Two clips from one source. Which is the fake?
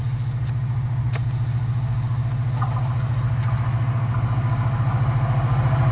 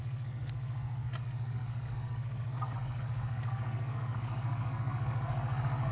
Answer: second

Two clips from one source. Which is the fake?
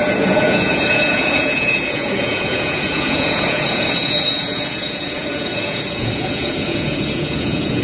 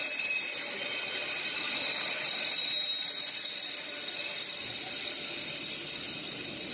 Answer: first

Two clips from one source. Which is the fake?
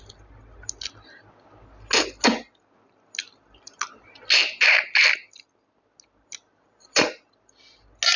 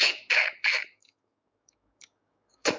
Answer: second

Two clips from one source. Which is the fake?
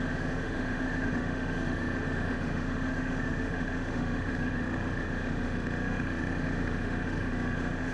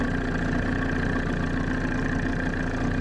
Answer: first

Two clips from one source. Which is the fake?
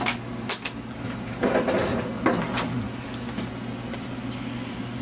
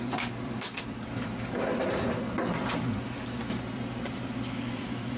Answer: second